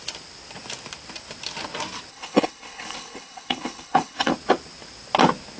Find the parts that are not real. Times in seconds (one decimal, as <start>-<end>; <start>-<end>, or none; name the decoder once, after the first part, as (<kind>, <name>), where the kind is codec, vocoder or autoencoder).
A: 2.1-4.3 (codec, HILCodec)